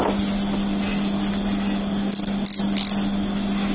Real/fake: real